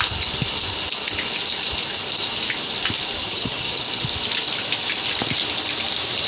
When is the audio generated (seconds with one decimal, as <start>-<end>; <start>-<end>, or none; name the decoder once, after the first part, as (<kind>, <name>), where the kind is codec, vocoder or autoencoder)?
3.2-3.8 (vocoder, HiFi-GAN)